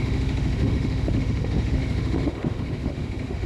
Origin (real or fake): fake